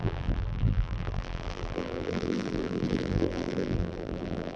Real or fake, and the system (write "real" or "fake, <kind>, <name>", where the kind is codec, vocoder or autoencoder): fake, vocoder, BigVGAN v2